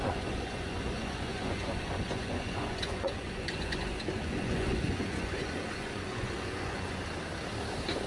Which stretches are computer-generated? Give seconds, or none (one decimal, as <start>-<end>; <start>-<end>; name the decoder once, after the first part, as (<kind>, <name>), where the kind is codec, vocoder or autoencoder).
0.0-7.0 (vocoder, Vocos)